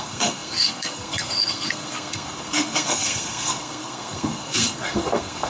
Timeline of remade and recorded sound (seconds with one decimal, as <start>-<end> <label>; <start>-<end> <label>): 0.0-5.5 remade